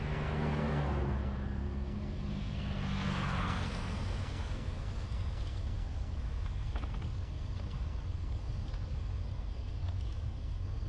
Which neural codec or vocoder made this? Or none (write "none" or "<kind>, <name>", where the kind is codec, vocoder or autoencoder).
codec, SNAC